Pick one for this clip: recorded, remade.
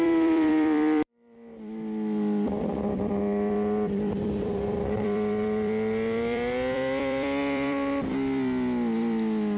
remade